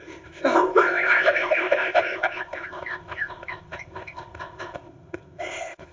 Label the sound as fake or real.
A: fake